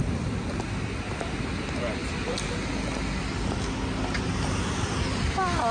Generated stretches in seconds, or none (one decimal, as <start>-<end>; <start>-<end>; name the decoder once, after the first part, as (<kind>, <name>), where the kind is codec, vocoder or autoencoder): none

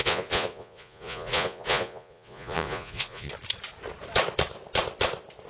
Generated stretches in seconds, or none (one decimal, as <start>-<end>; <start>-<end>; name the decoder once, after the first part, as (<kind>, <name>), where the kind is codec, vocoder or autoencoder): 0.0-3.3 (vocoder, Vocos)

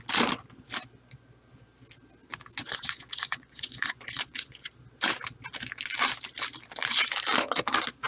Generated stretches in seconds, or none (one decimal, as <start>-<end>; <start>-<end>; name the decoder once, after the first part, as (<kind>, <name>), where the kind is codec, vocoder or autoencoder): 2.6-4.7 (vocoder, Vocos)

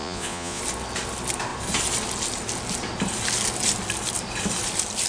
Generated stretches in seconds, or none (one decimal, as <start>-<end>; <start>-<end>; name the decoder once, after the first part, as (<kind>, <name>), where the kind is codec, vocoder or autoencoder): 0.0-0.6 (vocoder, Vocos)

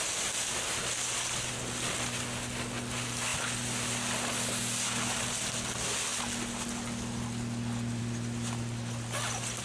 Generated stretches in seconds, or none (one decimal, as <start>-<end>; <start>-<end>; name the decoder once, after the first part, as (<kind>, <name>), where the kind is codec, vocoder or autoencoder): none

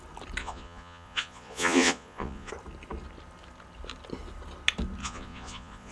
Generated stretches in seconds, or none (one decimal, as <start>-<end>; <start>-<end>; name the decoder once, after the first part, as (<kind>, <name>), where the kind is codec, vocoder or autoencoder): 0.4-2.5 (vocoder, Vocos); 5.0-5.9

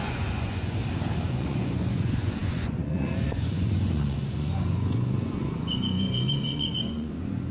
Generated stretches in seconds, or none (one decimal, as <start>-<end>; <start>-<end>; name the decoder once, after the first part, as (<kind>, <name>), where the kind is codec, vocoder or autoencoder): 0.0-0.8 (vocoder, Vocos); 1.3-7.5